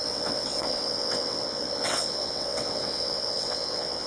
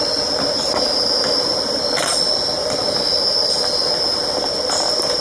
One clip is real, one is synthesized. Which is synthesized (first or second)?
first